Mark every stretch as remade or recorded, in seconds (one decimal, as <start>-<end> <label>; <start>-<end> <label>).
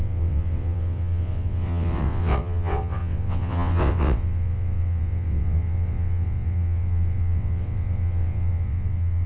0.0-9.3 remade